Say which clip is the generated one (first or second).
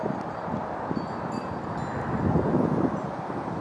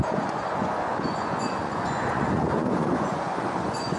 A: second